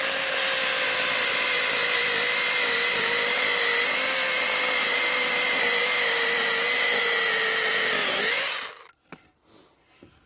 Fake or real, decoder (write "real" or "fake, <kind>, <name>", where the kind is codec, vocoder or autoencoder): real